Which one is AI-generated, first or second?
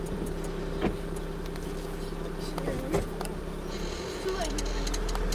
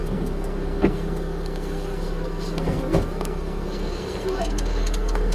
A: second